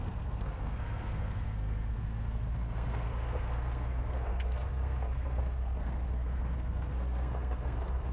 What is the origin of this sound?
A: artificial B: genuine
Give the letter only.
A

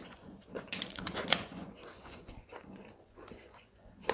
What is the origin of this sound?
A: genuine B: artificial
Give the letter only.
B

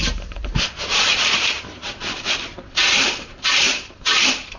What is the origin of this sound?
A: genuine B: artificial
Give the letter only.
B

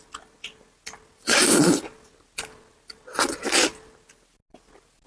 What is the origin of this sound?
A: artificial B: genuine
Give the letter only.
B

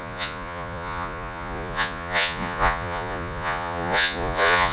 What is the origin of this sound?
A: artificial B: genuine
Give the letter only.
A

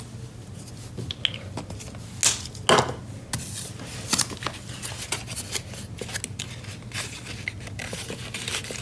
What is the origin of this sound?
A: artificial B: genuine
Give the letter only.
B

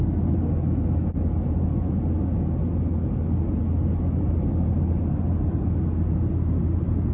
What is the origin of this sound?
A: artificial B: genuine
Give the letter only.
B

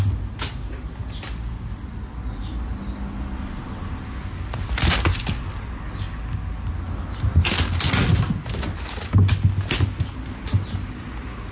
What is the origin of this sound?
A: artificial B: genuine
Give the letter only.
B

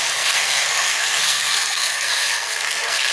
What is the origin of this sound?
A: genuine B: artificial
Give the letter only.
B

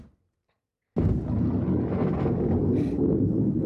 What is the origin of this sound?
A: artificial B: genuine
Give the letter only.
B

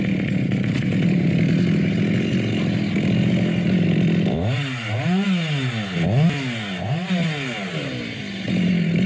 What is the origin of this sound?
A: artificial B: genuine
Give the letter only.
B